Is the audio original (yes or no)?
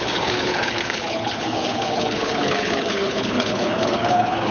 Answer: no